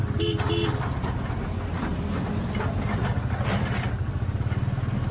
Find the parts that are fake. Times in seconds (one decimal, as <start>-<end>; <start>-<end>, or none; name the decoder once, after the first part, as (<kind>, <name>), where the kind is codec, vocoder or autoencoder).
none